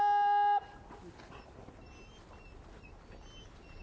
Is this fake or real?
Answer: real